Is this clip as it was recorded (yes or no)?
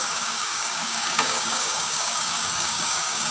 no